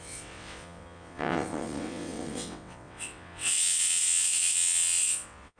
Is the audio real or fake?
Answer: fake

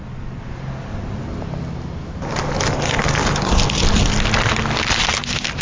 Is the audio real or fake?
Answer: real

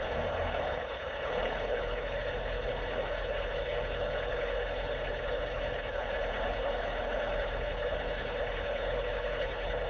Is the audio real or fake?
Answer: fake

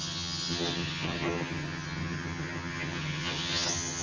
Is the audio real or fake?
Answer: fake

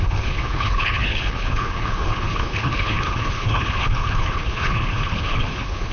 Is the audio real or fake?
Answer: fake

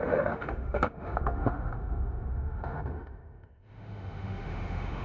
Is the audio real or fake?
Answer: fake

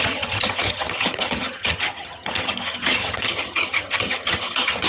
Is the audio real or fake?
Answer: fake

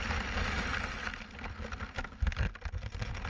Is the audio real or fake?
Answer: real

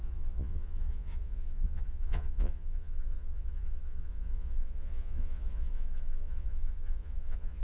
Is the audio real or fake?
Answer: fake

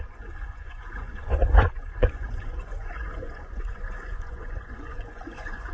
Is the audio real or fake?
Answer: fake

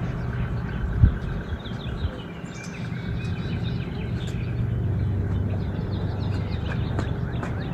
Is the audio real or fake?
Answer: real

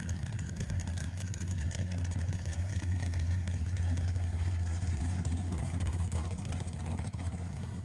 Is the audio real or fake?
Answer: fake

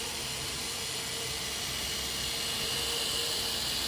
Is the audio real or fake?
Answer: real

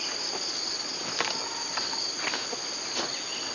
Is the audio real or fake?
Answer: real